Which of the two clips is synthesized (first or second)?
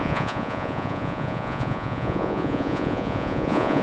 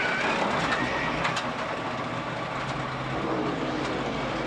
first